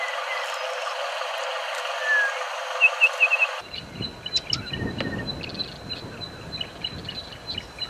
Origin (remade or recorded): recorded